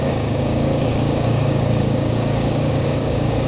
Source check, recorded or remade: remade